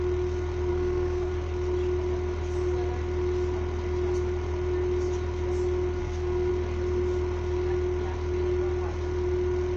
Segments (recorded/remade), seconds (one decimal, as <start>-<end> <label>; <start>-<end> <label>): 0.0-0.7 recorded; 0.7-1.3 remade; 1.3-6.0 recorded; 6.0-6.5 remade; 6.5-9.8 recorded